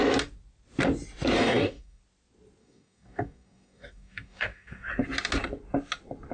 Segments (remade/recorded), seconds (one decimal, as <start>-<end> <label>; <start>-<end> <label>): 0.0-1.4 recorded; 1.4-2.0 remade; 2.0-2.6 recorded; 2.6-4.9 remade; 4.9-6.3 recorded